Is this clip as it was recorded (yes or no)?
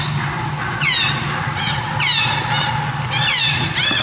yes